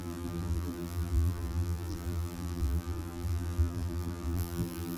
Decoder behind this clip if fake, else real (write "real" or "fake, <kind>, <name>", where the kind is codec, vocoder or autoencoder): fake, vocoder, BigVGAN v2